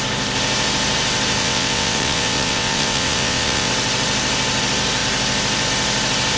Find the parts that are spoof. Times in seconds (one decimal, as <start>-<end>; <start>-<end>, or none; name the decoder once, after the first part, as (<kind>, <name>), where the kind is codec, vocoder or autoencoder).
1.4-3.7 (vocoder, WaveNeXt)